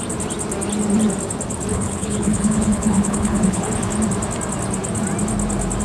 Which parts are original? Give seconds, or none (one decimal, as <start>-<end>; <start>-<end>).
0.0-1.7; 3.7-5.8